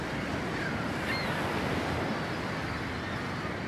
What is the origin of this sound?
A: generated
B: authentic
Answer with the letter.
B